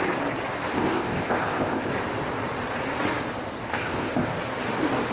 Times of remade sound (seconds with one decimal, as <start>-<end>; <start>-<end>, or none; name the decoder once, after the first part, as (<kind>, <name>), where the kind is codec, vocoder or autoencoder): 0.7-1.9 (codec, ZipCodec); 3.7-4.4